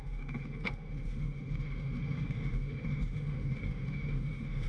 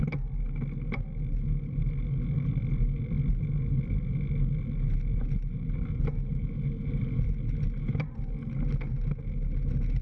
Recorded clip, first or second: second